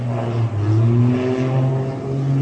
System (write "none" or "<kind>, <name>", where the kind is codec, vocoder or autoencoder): none